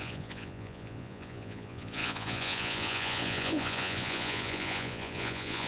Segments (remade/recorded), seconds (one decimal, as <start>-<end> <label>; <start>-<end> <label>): 0.0-5.7 remade